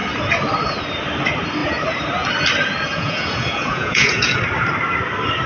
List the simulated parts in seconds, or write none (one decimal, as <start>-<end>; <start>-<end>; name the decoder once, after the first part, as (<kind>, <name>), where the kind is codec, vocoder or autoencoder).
2.9-4.4 (vocoder, Vocos)